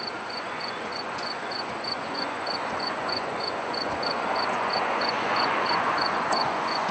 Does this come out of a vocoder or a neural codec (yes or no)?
yes